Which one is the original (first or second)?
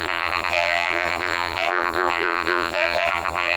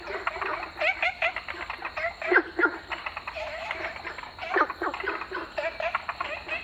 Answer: second